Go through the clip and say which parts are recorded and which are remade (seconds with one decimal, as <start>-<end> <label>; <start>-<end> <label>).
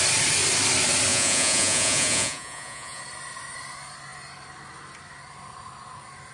0.0-1.1 recorded; 1.1-3.0 remade; 3.0-6.3 recorded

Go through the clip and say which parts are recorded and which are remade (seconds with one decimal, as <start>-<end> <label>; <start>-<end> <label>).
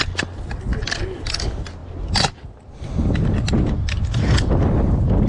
0.0-5.3 recorded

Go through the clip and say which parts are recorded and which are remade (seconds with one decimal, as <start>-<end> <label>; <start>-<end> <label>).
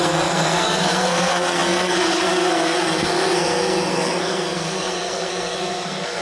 0.0-6.2 remade